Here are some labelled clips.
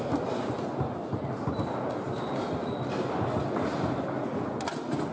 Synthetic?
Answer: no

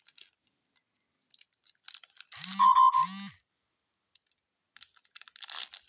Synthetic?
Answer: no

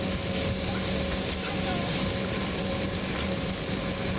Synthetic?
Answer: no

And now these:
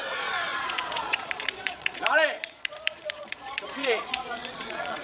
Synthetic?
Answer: yes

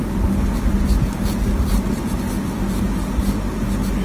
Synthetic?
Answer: no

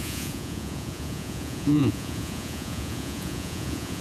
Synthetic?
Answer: yes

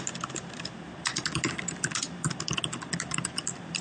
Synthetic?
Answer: no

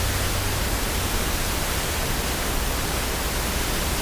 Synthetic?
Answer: no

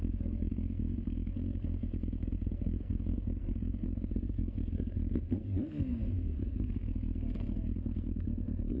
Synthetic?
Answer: yes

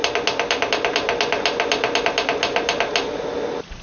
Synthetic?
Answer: no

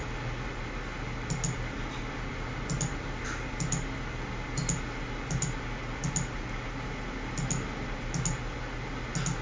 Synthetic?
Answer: no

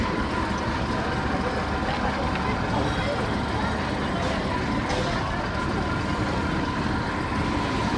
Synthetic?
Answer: no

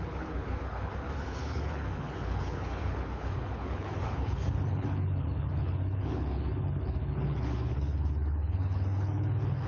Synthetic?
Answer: yes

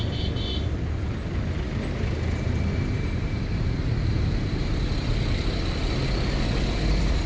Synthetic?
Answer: no